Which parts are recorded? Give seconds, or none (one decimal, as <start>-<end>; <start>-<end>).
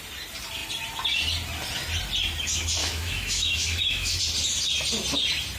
0.0-2.8; 4.2-5.6